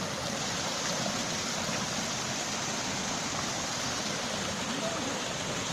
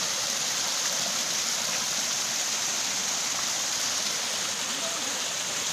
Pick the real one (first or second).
first